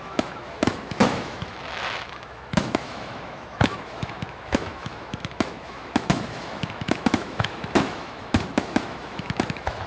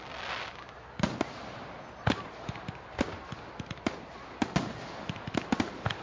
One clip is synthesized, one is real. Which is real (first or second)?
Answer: second